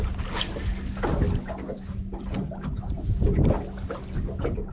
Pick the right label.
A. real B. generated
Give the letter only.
A